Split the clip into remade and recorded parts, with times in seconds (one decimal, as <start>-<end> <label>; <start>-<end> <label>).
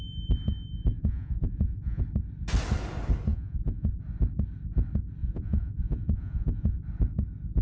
0.0-0.9 recorded; 0.9-2.0 remade; 2.0-3.3 recorded; 3.3-4.0 remade; 4.0-5.2 recorded; 5.2-6.8 remade; 6.8-7.6 recorded